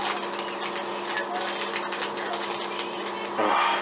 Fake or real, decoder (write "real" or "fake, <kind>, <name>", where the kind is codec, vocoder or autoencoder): real